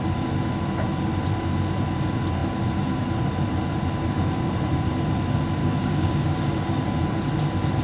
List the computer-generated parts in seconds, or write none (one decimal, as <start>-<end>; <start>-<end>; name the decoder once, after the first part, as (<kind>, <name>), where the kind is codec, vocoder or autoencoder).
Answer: 5.6-6.9 (codec, DAC)